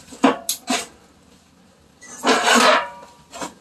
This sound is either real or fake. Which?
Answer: real